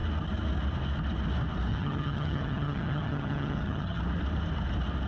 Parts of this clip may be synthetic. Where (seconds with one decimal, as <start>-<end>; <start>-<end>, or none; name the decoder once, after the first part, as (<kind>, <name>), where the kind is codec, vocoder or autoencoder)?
1.7-4.0 (vocoder, HiFi-GAN)